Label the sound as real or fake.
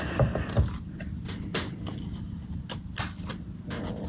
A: real